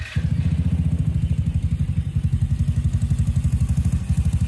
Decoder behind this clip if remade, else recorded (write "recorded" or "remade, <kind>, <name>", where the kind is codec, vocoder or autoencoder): recorded